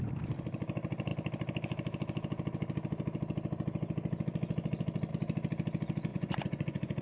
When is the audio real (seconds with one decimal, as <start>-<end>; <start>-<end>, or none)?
0.0-6.1